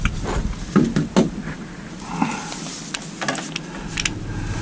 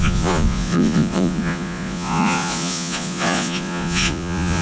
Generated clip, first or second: second